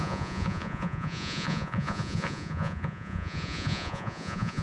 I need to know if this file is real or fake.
fake